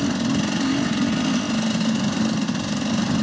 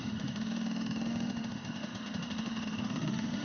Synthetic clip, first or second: second